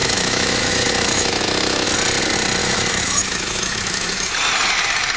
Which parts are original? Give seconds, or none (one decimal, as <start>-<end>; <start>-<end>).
1.9-2.6; 4.3-5.2